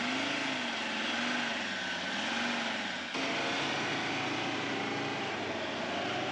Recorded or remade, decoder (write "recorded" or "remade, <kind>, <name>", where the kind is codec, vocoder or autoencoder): recorded